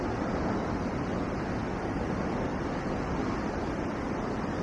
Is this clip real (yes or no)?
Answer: yes